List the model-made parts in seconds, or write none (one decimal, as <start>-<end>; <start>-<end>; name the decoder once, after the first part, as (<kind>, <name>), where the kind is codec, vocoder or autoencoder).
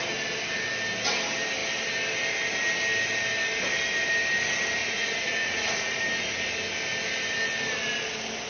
4.8-6.0 (vocoder, Vocos)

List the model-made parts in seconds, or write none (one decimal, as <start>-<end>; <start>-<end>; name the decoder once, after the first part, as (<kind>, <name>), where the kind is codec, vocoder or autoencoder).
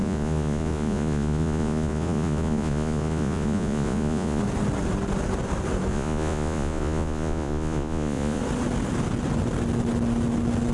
0.0-4.4 (vocoder, Vocos); 5.9-8.4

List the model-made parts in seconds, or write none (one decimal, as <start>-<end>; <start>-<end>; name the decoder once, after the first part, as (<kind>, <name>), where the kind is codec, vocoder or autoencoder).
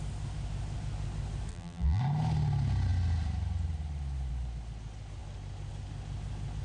1.5-2.0 (vocoder, BigVGAN v2)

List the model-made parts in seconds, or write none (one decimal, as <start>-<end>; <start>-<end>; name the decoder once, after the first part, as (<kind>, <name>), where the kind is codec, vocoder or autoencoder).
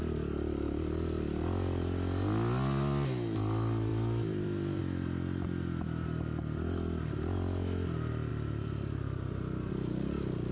3.9-4.8 (vocoder, BigVGAN v2); 8.3-9.7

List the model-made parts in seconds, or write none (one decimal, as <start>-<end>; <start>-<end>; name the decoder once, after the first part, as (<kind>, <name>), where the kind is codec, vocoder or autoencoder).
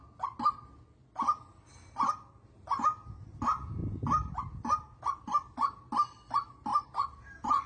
6.7-7.7 (vocoder, BigVGAN v2)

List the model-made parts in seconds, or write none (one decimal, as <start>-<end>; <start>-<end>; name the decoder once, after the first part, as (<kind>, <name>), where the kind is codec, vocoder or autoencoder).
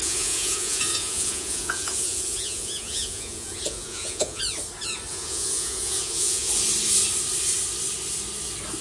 0.0-4.4 (vocoder, Vocos); 5.1-6.5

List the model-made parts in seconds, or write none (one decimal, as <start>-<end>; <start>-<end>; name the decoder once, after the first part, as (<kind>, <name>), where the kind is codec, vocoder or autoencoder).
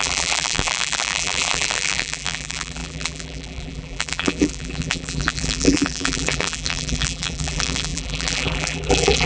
0.0-9.3 (vocoder, BigVGAN v2)